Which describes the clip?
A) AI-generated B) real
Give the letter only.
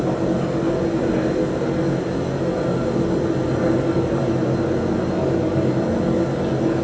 B